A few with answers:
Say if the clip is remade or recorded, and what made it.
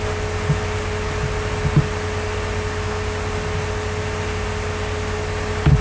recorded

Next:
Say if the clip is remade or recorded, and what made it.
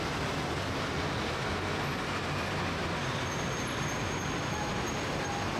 recorded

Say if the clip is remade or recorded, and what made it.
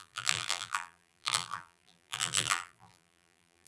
remade, vocoder, BigVGAN v2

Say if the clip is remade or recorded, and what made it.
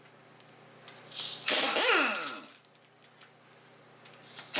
recorded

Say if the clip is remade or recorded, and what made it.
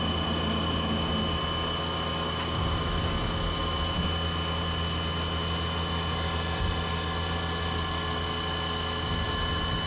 recorded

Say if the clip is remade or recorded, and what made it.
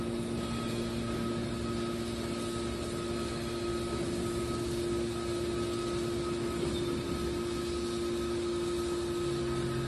recorded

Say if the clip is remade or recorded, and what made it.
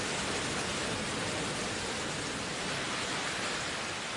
remade, vocoder, BigVGAN v2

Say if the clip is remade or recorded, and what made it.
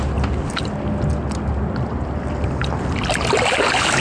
recorded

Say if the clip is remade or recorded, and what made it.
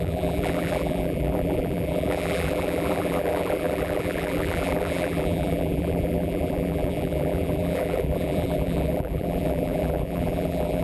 remade, vocoder, BigVGAN v2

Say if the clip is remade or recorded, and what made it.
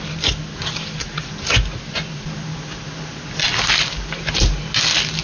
recorded